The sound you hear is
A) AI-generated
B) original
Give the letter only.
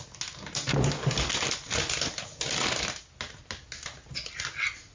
B